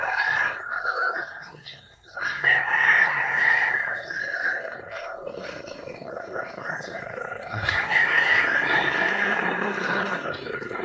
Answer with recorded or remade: remade